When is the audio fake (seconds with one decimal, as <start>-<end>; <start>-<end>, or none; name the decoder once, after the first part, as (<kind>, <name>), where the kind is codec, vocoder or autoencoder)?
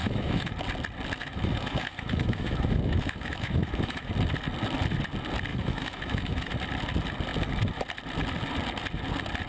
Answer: 0.0-0.5 (autoencoder, DAC-VAE); 1.2-4.1; 5.5-6.5